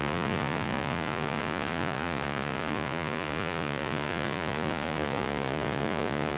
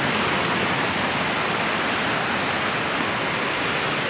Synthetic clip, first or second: first